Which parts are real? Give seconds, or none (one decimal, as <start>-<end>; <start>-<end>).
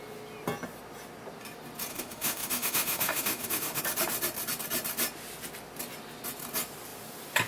0.0-1.9; 3.8-7.5